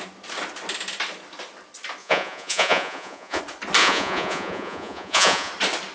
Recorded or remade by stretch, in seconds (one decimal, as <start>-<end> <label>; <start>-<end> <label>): 0.0-2.0 recorded; 2.0-3.4 remade; 3.4-3.8 recorded; 3.8-5.5 remade; 5.5-5.9 recorded